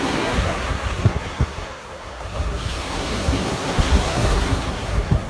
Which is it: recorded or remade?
remade